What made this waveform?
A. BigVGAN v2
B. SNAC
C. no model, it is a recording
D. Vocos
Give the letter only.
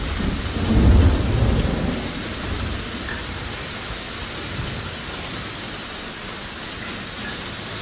C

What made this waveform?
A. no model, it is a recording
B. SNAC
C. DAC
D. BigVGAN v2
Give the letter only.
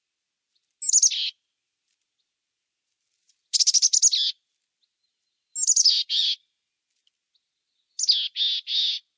A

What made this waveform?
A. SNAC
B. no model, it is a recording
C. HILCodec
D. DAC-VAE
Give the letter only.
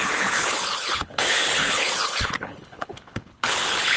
C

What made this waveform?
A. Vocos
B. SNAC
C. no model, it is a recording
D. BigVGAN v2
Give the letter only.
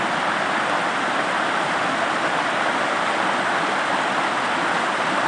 C